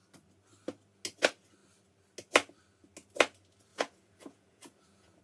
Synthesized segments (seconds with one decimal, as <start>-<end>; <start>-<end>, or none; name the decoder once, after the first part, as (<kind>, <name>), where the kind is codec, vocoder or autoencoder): 3.7-5.2 (vocoder, Vocos)